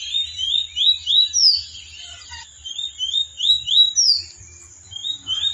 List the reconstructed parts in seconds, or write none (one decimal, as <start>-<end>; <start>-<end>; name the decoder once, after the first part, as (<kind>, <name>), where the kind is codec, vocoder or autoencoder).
0.0-0.7 (vocoder, BigVGAN v2); 2.4-3.3; 4.4-5.5